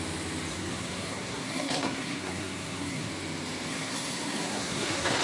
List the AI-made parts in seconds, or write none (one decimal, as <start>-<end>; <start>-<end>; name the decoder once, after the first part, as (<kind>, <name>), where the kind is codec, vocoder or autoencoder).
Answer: 0.5-3.1 (codec, SNAC); 3.7-5.2